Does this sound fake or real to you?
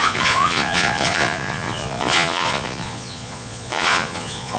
fake